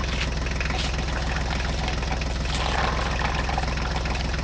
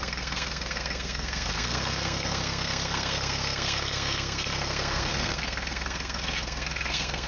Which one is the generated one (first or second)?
second